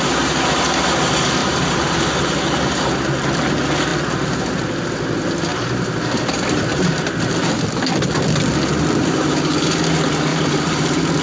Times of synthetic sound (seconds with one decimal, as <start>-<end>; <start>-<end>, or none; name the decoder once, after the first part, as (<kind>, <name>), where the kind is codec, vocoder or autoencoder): 1.4-2.6 (vocoder, BigVGAN v2); 5.5-7.5; 10.3-11.2